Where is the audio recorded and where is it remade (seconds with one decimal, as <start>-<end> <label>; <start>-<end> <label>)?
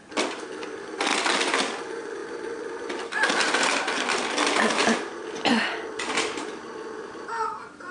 0.0-1.1 remade; 1.1-1.8 recorded; 1.8-7.9 remade